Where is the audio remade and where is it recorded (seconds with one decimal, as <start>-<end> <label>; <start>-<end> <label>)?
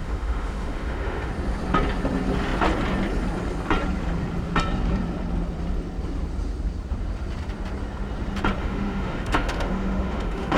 0.0-1.3 remade; 1.3-8.6 recorded; 8.6-10.6 remade